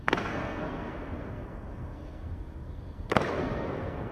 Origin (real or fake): fake